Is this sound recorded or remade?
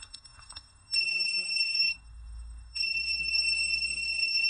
remade